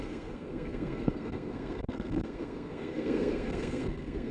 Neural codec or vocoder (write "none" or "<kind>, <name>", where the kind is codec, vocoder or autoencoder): codec, SNAC